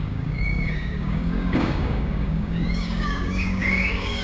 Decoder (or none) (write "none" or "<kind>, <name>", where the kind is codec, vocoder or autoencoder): codec, DAC